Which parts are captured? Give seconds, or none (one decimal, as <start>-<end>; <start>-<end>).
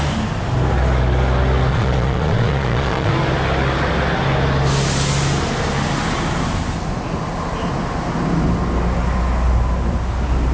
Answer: 0.0-1.7; 3.1-10.5